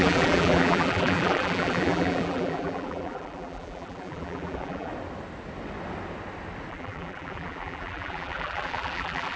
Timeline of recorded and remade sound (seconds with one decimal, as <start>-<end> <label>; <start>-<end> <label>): 0.0-4.9 remade; 4.9-6.7 recorded; 6.7-9.4 remade